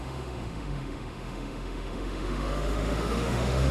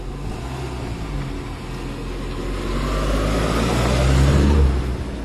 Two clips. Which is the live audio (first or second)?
second